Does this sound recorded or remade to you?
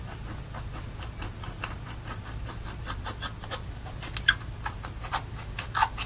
recorded